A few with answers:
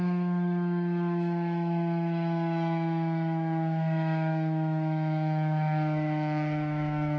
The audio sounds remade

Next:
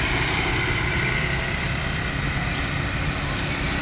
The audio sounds recorded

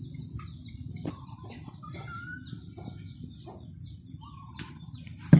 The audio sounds remade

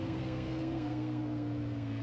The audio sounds remade